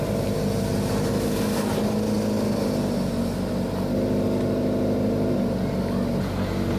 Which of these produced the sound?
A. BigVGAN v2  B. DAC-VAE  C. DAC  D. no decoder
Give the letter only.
D